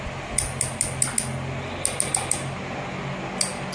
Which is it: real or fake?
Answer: real